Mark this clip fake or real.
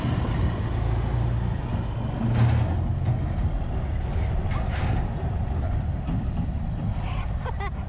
real